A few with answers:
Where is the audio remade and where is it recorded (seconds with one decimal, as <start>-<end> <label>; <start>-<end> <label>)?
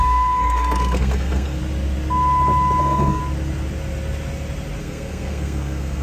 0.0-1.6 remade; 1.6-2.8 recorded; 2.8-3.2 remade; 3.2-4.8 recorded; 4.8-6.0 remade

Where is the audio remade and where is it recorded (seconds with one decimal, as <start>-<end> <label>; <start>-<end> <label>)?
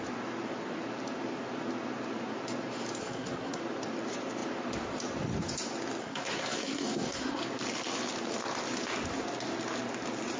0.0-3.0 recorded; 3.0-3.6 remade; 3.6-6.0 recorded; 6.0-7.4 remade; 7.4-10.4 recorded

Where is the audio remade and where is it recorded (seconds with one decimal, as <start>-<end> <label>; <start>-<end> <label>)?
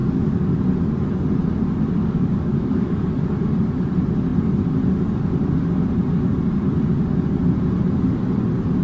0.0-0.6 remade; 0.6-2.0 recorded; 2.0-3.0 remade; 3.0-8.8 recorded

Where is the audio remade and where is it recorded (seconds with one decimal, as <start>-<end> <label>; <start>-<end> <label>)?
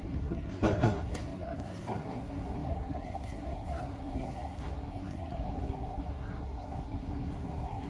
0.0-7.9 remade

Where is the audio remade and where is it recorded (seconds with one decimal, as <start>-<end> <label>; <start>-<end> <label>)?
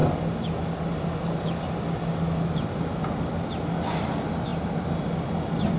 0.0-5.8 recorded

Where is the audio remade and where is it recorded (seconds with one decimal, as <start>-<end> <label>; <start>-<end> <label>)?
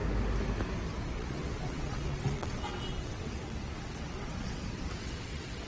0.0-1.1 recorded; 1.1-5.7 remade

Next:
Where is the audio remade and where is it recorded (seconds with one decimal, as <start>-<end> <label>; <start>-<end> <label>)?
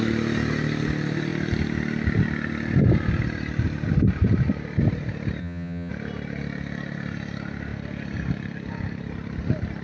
0.0-5.4 recorded; 5.4-5.9 remade; 5.9-9.8 recorded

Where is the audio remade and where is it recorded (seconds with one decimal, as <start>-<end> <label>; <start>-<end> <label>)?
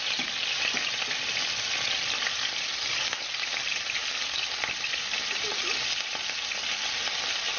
0.0-7.6 recorded